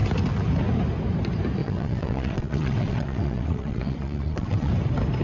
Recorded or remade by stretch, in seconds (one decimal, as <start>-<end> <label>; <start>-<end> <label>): 0.0-1.6 recorded; 1.6-4.7 remade; 4.7-5.2 recorded